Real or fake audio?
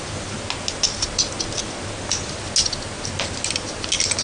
real